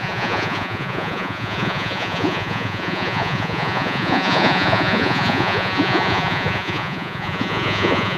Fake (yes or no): yes